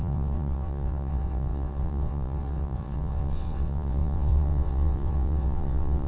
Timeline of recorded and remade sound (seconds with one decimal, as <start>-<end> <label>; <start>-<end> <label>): 0.0-6.1 remade